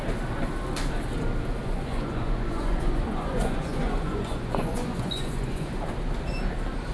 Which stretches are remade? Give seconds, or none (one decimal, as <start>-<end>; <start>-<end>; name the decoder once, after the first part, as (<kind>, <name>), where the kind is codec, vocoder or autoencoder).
1.6-5.7 (vocoder, Vocos)